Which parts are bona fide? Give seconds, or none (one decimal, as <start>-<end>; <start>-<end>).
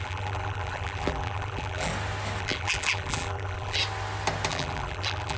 1.9-2.4; 3.8-4.5